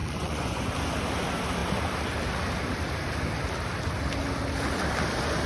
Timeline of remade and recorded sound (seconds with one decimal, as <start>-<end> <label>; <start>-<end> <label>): 0.0-0.7 remade; 0.7-5.5 recorded